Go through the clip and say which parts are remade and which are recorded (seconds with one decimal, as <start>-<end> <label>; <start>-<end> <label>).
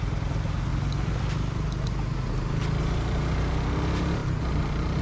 0.0-0.7 remade; 0.7-2.8 recorded; 2.8-5.0 remade